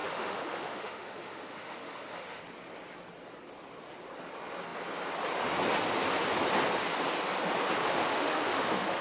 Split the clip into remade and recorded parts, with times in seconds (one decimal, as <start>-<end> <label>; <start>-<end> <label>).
0.0-2.4 remade; 2.4-7.8 recorded; 7.8-9.0 remade